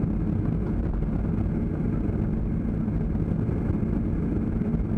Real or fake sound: real